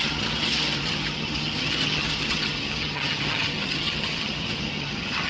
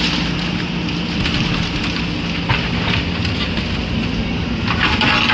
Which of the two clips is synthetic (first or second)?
first